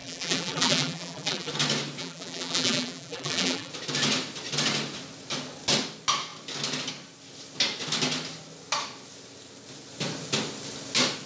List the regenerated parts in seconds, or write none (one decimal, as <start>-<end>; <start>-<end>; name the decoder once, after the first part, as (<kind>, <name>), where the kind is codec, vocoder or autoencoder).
0.0-1.5 (vocoder, BigVGAN v2); 2.0-3.7